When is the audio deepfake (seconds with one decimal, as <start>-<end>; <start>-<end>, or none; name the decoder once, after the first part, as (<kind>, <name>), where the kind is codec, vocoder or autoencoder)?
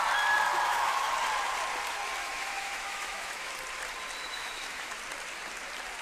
0.5-1.1 (autoencoder, DAC-VAE); 2.2-3.5; 4.2-4.9